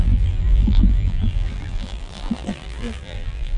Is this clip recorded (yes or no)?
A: no